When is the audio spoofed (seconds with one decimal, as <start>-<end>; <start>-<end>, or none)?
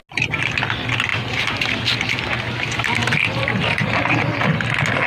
1.1-2.2; 3.0-4.3